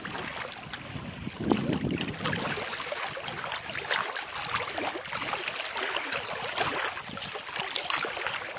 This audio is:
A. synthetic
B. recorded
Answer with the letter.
B